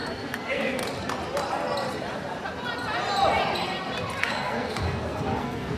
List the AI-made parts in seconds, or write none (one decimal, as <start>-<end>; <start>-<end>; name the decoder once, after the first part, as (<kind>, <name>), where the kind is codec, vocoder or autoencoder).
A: 0.0-0.8 (codec, SNAC); 4.2-5.8